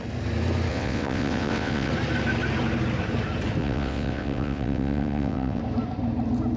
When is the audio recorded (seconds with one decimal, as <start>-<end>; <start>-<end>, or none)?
0.0-0.7; 1.9-3.6; 5.6-6.6